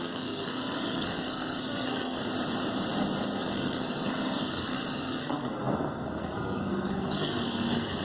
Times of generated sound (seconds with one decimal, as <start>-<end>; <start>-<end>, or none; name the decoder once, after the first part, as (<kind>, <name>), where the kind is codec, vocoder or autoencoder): 0.0-2.2 (codec, SNAC); 3.4-8.0